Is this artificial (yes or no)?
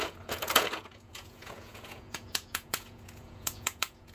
yes